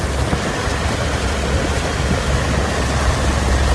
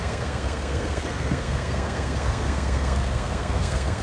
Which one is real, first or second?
first